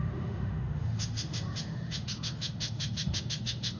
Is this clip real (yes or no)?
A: no